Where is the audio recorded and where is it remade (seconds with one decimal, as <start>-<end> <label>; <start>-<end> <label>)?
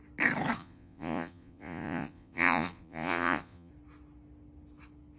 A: 0.0-0.6 recorded; 0.6-3.7 remade; 3.7-5.2 recorded